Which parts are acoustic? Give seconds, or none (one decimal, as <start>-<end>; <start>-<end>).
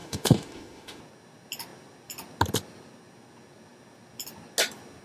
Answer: 1.0-5.0